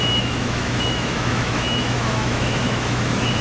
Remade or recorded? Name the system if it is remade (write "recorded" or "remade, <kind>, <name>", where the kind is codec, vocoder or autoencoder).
remade, autoencoder, DAC-VAE